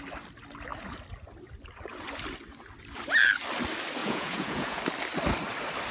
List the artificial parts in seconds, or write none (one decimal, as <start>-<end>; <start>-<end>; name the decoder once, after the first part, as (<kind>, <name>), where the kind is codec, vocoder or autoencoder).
4.0-4.8 (vocoder, Vocos)